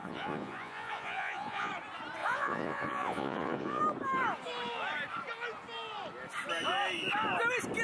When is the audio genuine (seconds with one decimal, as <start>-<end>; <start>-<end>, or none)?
1.7-2.2; 3.8-7.8